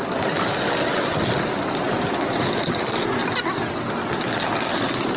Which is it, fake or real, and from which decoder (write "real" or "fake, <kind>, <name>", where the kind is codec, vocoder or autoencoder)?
real